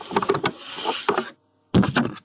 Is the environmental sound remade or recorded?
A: recorded